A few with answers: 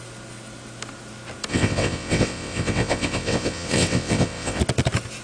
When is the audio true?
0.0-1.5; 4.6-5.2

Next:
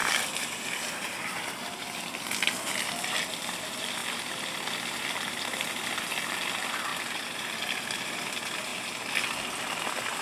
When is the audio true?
0.0-1.3; 8.7-10.2